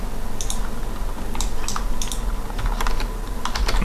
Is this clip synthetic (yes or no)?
no